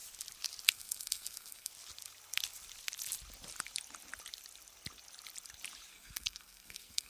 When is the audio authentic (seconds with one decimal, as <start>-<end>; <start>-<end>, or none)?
0.0-0.7; 1.7-5.9